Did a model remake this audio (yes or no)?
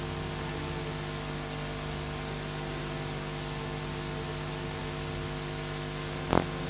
no